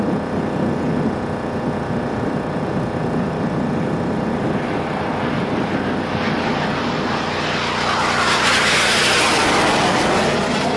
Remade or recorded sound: recorded